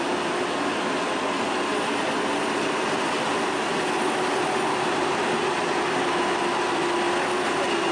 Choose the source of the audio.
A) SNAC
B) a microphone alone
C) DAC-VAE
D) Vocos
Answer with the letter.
B